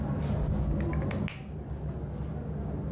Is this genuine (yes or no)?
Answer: yes